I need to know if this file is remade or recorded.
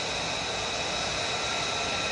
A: recorded